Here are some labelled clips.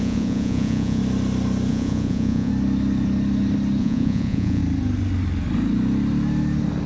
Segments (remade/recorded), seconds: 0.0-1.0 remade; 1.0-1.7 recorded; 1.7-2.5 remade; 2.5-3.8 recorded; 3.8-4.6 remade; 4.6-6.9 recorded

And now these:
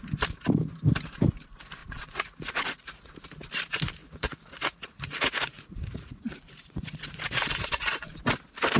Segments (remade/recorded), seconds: 0.0-1.8 recorded; 1.8-3.1 remade; 3.1-4.0 recorded; 4.0-8.2 remade; 8.2-8.8 recorded

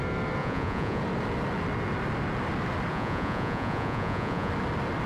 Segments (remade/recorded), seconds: 0.0-0.4 recorded; 0.4-1.0 remade; 1.0-2.9 recorded; 2.9-4.5 remade; 4.5-5.1 recorded

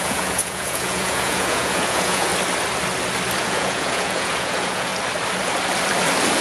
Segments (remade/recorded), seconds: 0.0-2.3 remade; 2.3-3.4 recorded; 3.4-4.9 remade; 4.9-6.4 recorded

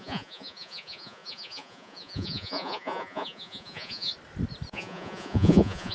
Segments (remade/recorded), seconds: 0.0-4.1 remade; 4.1-4.7 recorded; 4.7-5.9 remade